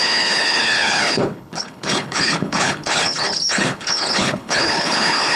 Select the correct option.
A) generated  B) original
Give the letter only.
A